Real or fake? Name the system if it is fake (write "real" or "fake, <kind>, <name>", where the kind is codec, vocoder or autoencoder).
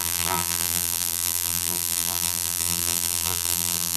fake, vocoder, BigVGAN v2